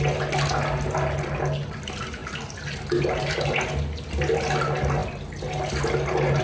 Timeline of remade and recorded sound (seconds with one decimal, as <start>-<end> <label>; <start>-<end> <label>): 0.0-6.4 recorded